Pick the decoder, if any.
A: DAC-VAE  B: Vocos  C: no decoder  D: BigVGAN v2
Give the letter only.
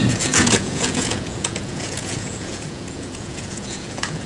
B